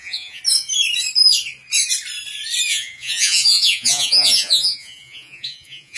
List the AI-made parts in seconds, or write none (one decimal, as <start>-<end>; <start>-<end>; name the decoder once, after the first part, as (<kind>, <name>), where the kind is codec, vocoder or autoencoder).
0.0-0.4 (vocoder, Vocos); 2.7-6.0